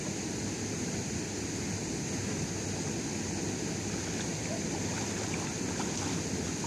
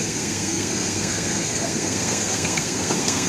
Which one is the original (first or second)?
first